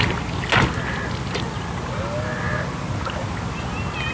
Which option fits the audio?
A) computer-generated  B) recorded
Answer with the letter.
B